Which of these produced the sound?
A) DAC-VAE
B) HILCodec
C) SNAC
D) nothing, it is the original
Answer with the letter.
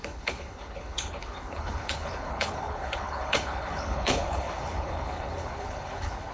B